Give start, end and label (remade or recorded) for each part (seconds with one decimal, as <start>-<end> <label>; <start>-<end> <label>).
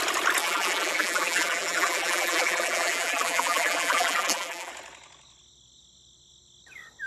0.0-0.4 recorded; 0.4-4.7 remade; 4.7-7.1 recorded